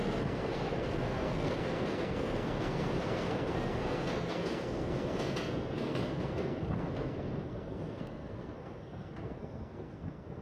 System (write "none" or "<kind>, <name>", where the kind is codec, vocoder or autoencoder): codec, SNAC